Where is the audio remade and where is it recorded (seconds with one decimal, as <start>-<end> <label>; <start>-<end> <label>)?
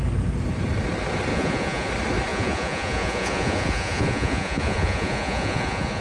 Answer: 0.0-1.3 recorded; 1.3-1.9 remade; 1.9-2.3 recorded; 2.3-6.0 remade